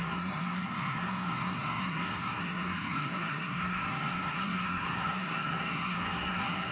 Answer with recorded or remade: remade